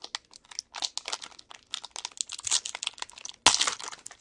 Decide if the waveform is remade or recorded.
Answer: recorded